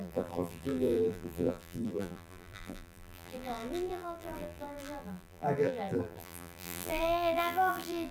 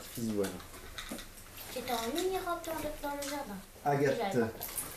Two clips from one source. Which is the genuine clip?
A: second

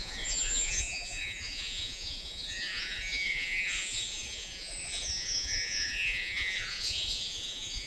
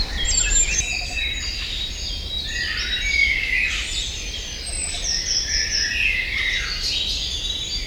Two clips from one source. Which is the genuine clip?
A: second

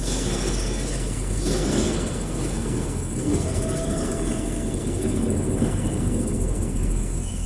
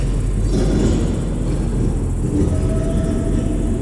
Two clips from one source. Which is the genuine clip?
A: second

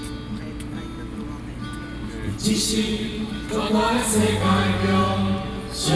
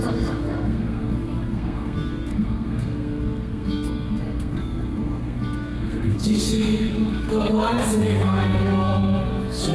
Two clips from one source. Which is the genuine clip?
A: first